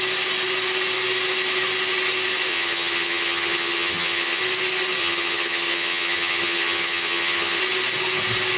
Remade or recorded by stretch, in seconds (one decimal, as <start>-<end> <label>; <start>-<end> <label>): 0.0-2.5 recorded; 2.5-4.4 remade; 4.4-5.0 recorded; 5.0-7.6 remade; 7.6-8.6 recorded